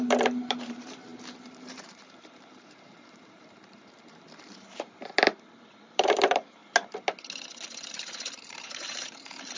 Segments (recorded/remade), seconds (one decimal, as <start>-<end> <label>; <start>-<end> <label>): 0.0-6.6 remade; 6.6-7.9 recorded; 7.9-9.6 remade